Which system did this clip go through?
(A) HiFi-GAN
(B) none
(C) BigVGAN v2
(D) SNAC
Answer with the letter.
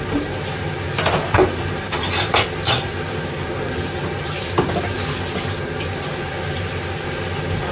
B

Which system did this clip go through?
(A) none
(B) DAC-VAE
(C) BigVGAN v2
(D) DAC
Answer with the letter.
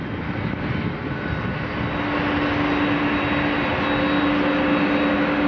A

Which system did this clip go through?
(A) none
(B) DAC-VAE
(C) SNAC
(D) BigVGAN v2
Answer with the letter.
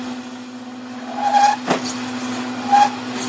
A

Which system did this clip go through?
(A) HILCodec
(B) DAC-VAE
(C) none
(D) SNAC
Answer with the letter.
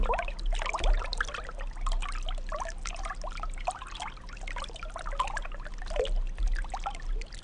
C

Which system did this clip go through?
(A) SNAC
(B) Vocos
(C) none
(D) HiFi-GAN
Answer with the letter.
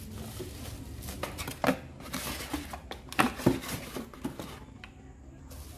C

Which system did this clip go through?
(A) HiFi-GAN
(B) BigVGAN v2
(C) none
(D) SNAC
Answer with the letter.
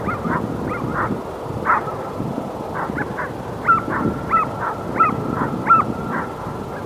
C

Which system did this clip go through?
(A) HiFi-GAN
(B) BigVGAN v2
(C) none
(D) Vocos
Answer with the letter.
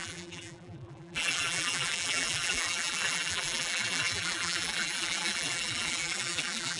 B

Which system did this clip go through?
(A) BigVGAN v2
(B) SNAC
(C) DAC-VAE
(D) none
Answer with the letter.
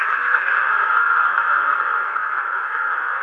B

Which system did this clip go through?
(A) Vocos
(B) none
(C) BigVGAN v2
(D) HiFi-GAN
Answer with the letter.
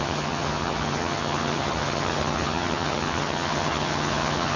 D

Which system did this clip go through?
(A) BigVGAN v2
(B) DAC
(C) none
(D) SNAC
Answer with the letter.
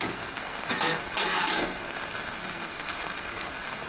D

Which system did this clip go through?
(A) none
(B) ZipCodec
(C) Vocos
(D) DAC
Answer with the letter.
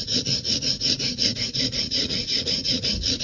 C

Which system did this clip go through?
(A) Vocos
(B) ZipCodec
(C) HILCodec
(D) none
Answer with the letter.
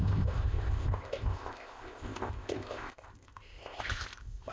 B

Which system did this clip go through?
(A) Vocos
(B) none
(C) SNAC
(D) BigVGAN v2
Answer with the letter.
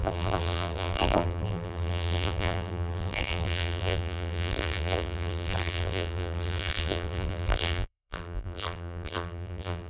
D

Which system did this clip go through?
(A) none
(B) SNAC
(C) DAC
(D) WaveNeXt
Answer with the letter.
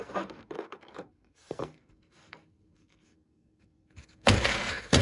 B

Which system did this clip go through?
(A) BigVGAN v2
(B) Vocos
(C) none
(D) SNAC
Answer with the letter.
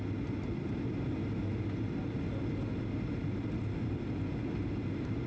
C